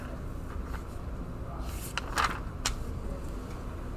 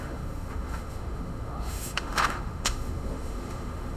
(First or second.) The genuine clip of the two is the first